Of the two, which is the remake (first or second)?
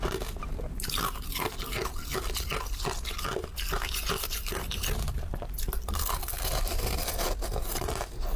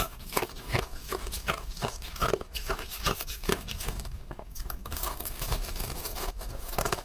second